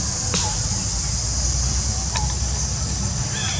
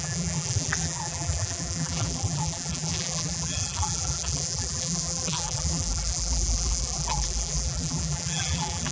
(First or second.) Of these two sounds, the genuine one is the first